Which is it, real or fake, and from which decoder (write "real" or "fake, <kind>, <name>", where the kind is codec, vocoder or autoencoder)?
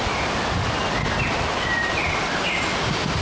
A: real